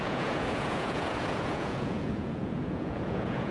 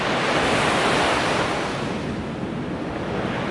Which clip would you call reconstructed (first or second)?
first